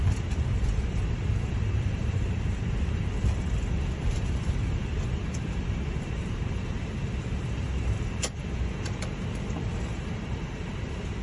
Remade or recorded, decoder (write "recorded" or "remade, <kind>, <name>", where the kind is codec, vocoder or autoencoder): remade, vocoder, BigVGAN v2